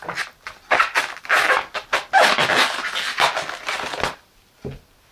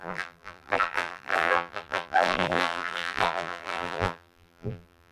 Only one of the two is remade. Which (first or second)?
second